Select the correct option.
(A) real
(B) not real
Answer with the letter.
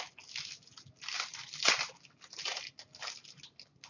A